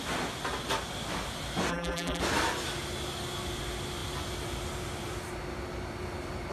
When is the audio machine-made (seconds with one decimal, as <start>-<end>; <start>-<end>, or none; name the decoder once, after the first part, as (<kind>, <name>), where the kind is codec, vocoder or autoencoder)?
1.7-2.2 (vocoder, BigVGAN v2)

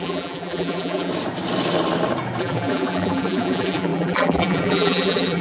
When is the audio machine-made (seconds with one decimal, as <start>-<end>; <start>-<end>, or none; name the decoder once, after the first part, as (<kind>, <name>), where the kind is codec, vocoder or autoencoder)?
0.0-1.1 (vocoder, BigVGAN v2); 2.4-5.4

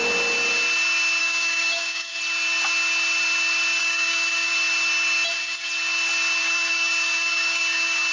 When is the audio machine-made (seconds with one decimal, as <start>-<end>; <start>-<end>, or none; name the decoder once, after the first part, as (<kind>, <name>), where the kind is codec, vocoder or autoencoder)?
1.2-2.1 (codec, DAC); 3.8-4.5; 6.4-8.1

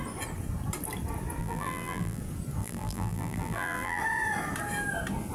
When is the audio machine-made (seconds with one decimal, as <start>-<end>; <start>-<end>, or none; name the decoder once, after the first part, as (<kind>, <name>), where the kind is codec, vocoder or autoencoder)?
1.4-2.2 (vocoder, BigVGAN v2); 2.6-4.0

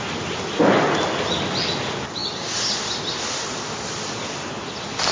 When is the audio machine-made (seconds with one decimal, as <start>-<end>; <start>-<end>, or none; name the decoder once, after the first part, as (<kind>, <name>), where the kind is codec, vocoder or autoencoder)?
none

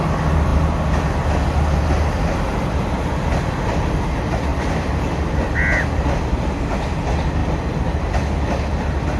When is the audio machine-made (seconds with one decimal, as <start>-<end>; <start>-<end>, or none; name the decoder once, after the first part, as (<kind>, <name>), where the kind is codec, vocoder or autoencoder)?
4.5-5.5 (vocoder, BigVGAN v2)